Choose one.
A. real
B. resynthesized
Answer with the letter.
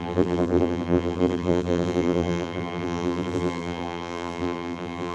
B